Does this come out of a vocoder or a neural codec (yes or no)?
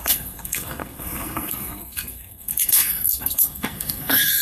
yes